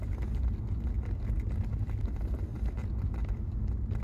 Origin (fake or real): real